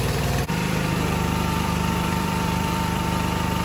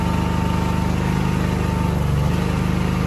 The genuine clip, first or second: second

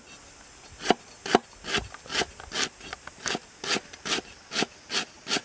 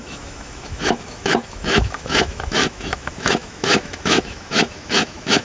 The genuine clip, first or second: first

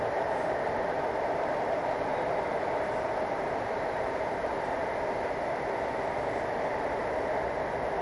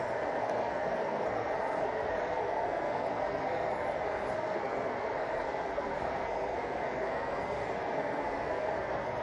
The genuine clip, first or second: first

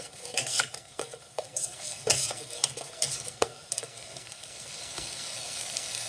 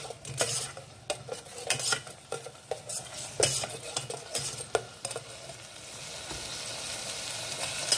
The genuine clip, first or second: second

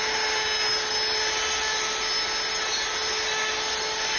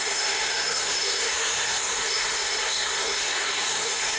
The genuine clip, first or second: first